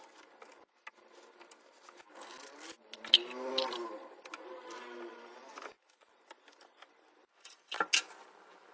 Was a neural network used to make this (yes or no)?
no